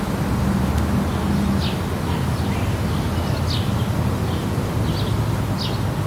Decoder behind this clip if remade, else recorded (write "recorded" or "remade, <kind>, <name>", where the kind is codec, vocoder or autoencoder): recorded